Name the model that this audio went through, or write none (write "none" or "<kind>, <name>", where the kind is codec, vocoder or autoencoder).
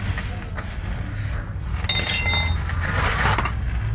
none